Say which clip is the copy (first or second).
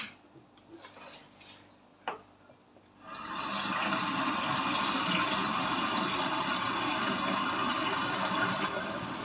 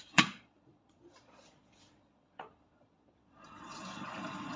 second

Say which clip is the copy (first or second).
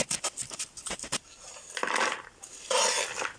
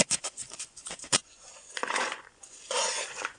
second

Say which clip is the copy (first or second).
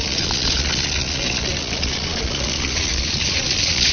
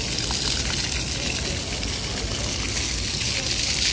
first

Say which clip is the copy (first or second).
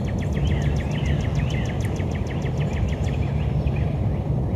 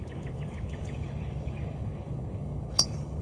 second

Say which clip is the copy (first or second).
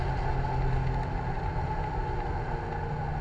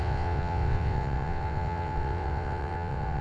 second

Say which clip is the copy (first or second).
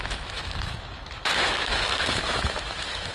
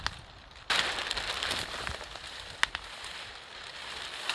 first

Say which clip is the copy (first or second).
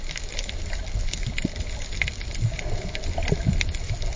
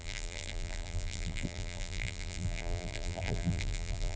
second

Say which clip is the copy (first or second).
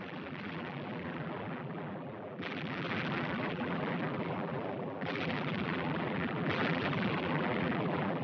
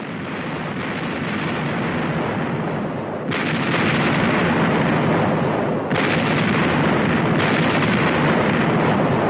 first